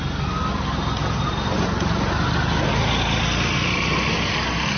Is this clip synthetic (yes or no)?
no